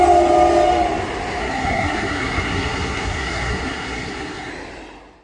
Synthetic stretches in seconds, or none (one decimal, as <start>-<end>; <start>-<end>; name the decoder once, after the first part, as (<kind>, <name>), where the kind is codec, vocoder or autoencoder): 1.4-4.5 (codec, SNAC)